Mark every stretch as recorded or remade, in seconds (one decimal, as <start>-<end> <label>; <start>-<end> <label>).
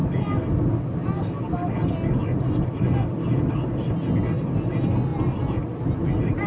0.0-6.5 recorded